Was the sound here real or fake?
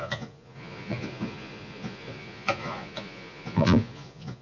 fake